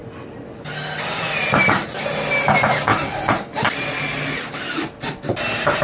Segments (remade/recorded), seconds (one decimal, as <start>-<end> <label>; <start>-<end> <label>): 0.0-5.8 recorded